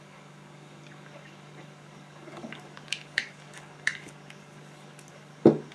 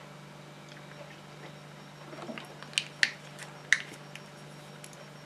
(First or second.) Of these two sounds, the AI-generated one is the first